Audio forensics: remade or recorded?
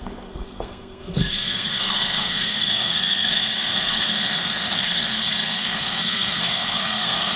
remade